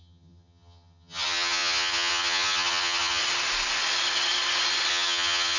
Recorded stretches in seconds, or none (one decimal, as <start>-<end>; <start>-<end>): 3.2-4.9